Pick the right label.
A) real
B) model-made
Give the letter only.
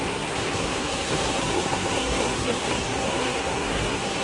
B